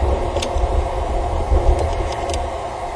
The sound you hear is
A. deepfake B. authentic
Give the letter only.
B